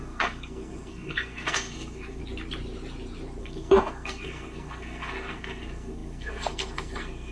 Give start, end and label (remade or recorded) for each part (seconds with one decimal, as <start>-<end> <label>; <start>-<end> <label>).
0.0-2.2 remade; 2.2-3.4 recorded; 3.4-7.3 remade